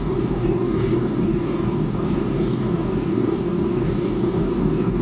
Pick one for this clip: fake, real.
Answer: fake